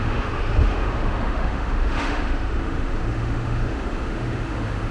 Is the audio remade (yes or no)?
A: yes